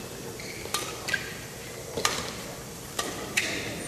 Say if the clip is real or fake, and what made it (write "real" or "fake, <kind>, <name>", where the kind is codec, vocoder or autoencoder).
fake, vocoder, BigVGAN v2